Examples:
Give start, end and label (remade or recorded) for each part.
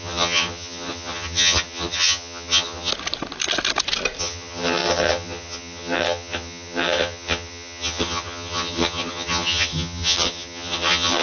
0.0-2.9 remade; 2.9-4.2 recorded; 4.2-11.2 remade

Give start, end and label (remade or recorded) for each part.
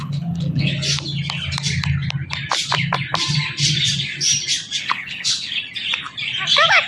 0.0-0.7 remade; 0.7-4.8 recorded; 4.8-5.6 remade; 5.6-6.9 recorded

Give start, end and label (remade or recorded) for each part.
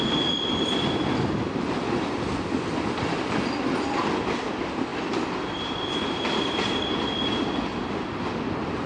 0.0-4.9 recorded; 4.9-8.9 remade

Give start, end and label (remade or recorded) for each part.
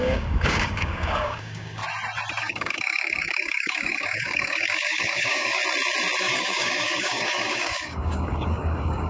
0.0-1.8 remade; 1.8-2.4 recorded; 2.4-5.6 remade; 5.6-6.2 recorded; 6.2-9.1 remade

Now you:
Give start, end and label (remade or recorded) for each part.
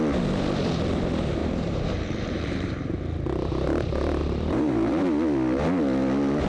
0.0-1.4 recorded; 1.4-3.0 remade; 3.0-4.2 recorded; 4.2-5.0 remade; 5.0-6.5 recorded